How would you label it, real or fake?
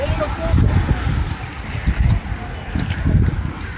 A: real